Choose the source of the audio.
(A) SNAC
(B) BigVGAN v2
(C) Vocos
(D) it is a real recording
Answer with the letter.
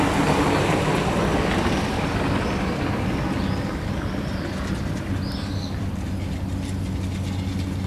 D